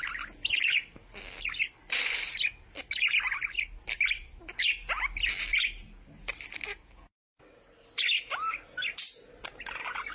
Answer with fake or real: real